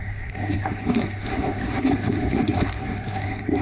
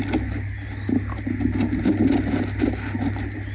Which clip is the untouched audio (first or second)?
second